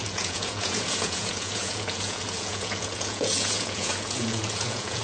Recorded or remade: remade